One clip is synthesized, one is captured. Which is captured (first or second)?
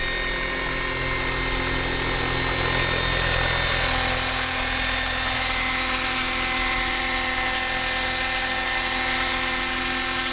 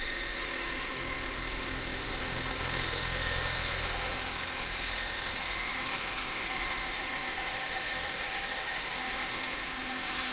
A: first